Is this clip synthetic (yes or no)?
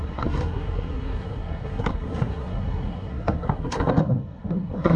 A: yes